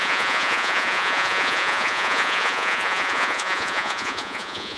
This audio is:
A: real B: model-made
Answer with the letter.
B